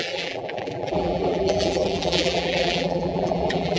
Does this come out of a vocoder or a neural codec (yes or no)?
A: yes